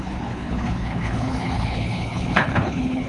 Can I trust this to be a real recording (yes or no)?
no